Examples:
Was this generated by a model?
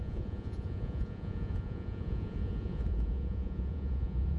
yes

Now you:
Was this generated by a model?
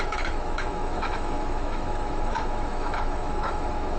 yes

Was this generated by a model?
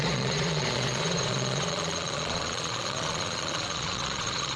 yes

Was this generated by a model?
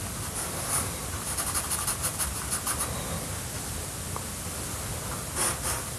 no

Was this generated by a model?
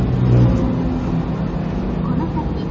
no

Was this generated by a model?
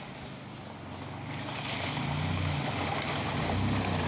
no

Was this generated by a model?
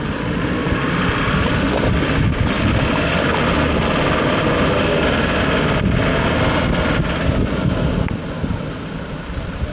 no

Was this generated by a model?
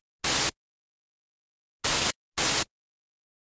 no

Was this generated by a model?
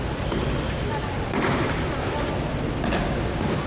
no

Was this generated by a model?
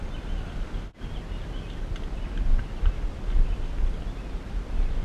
no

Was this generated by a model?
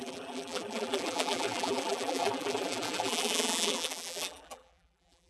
yes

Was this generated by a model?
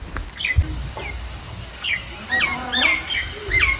no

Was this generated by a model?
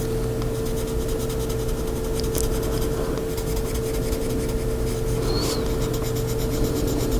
no